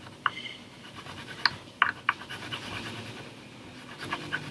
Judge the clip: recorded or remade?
recorded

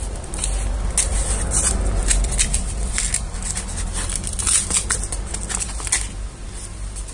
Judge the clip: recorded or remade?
recorded